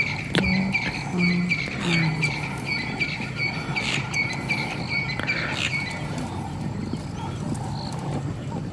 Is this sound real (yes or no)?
yes